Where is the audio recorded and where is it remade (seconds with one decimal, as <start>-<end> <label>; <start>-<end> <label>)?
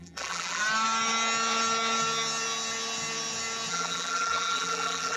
0.0-0.6 remade; 0.6-3.7 recorded; 3.7-5.2 remade